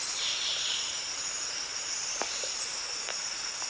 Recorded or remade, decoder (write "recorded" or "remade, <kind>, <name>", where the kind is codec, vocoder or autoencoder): remade, vocoder, BigVGAN v2